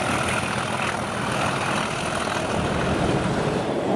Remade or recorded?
recorded